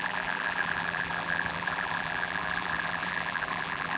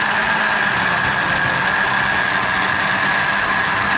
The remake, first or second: first